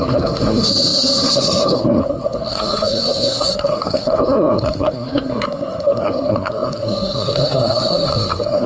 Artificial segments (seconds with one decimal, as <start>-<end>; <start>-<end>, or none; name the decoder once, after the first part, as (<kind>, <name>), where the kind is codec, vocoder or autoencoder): 0.0-8.7 (codec, SNAC)